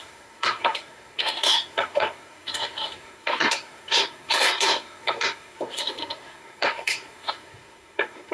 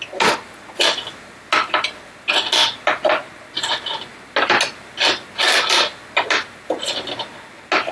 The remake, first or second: first